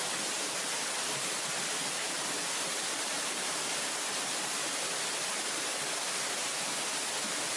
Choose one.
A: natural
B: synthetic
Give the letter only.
B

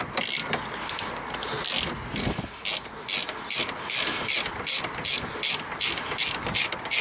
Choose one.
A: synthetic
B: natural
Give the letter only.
B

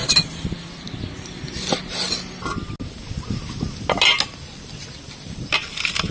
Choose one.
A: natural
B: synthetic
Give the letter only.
A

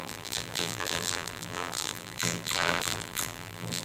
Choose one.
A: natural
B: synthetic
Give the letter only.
B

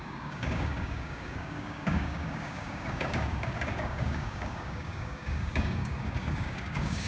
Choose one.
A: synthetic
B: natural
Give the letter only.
A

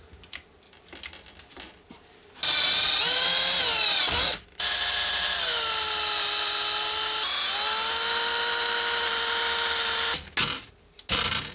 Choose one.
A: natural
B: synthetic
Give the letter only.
A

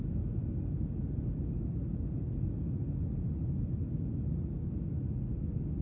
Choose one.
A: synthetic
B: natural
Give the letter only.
B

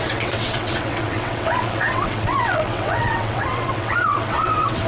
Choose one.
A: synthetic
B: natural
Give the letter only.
A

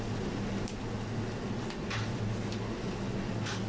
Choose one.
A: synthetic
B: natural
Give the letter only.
B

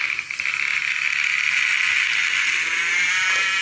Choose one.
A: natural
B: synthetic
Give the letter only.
A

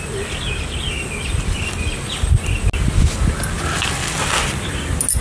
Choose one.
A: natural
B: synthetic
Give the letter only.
A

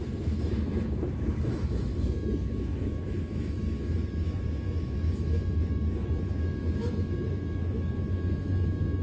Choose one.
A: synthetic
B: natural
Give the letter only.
A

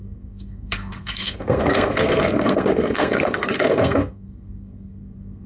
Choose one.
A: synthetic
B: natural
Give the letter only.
A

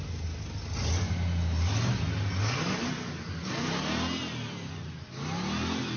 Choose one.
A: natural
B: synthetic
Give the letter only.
A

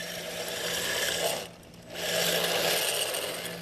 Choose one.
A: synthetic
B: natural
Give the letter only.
B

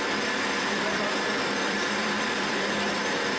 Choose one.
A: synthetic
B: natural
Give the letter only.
A